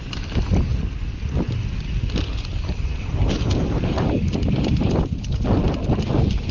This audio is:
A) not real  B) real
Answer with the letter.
B